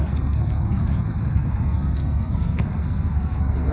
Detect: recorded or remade remade